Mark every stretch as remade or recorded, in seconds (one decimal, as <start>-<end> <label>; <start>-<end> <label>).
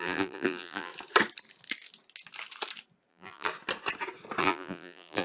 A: 0.0-0.9 remade; 0.9-3.1 recorded; 3.1-3.5 remade; 3.5-4.4 recorded; 4.4-5.2 remade